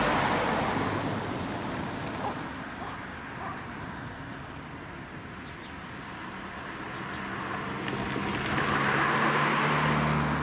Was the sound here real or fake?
real